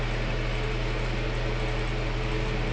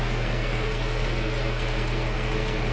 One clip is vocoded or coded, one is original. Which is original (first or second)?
first